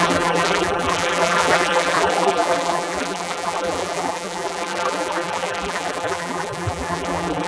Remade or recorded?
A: remade